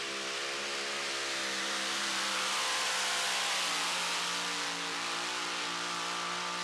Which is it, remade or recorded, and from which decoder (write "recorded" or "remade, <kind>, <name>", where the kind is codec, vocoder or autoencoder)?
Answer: recorded